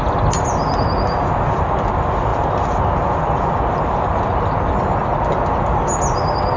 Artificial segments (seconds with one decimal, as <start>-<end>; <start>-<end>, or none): none